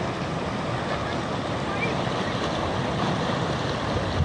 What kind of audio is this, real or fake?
real